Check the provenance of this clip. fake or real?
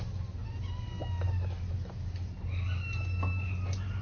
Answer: real